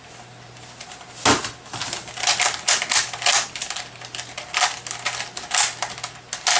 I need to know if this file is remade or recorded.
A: recorded